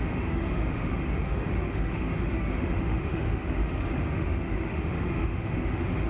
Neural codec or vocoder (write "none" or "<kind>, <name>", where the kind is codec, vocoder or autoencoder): autoencoder, DAC-VAE